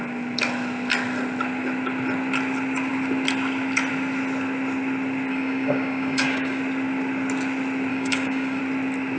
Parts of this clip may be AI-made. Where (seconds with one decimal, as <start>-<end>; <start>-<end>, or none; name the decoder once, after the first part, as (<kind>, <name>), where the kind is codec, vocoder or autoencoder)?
5.3-6.6 (codec, DAC); 7.9-8.6